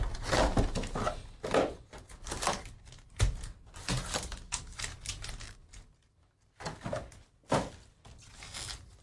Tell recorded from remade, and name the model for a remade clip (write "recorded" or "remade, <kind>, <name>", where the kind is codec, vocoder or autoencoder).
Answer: recorded